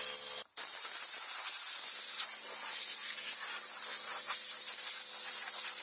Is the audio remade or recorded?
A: recorded